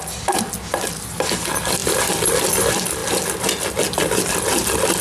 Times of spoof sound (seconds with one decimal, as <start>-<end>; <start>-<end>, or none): none